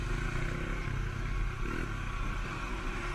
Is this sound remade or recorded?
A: recorded